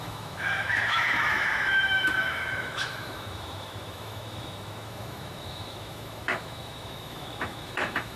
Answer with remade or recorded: remade